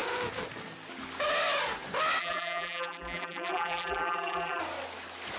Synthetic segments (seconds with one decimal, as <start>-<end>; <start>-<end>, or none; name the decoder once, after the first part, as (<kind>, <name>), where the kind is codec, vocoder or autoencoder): 2.2-4.6 (vocoder, BigVGAN v2)